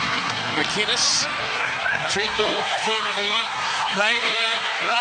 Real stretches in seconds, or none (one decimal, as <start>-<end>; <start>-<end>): 0.6-1.4